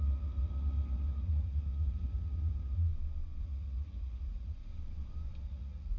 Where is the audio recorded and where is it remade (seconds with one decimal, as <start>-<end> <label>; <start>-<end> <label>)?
0.0-2.9 remade; 2.9-3.4 recorded; 3.4-4.7 remade; 4.7-5.4 recorded; 5.4-6.0 remade